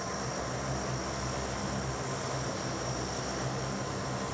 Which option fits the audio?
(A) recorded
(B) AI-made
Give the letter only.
A